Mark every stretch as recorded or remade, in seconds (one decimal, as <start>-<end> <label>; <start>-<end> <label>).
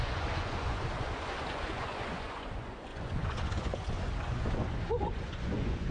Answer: 0.0-5.9 remade